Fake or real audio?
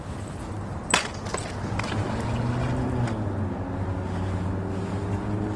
real